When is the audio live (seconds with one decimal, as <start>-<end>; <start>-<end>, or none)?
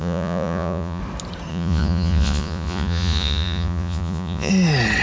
1.0-1.5; 4.5-5.0